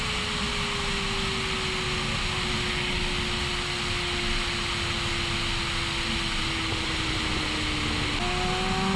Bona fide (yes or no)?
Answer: yes